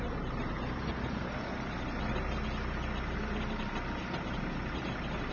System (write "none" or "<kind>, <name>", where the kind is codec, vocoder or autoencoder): none